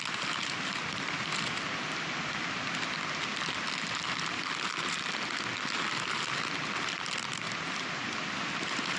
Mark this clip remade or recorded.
recorded